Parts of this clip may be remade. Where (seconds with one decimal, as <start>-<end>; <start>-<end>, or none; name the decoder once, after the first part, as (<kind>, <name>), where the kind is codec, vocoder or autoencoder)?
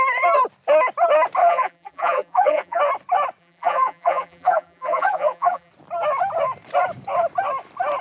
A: 1.4-2.8 (vocoder, BigVGAN v2); 3.4-5.7